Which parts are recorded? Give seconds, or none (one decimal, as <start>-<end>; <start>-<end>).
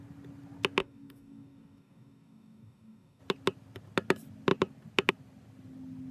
0.0-0.8; 3.2-6.1